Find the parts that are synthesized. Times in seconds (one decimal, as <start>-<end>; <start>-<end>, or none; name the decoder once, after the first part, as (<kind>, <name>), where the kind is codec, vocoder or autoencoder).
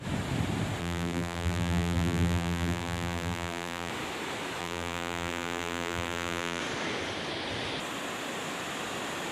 0.8-3.9 (vocoder, BigVGAN v2); 4.6-6.6